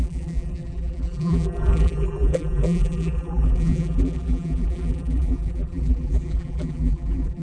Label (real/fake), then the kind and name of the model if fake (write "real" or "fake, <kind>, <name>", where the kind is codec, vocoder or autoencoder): fake, vocoder, BigVGAN v2